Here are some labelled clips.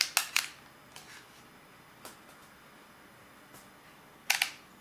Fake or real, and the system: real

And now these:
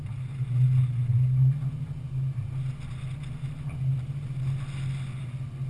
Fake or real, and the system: real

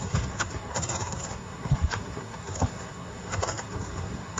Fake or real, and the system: fake, codec, SNAC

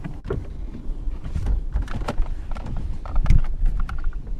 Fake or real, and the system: fake, vocoder, BigVGAN v2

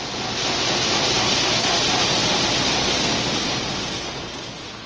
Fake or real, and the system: real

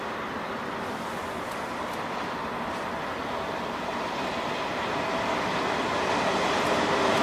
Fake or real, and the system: real